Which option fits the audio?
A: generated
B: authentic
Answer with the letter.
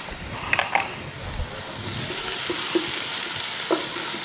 B